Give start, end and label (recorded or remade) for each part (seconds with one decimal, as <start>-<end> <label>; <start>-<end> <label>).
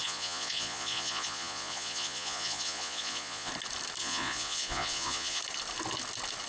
0.0-3.5 remade; 3.5-4.0 recorded; 4.0-5.4 remade; 5.4-6.5 recorded